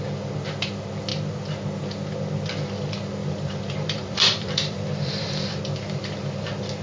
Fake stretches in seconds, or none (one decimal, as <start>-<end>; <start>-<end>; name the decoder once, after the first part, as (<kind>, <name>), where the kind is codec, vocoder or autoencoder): 3.2-5.6 (vocoder, BigVGAN v2)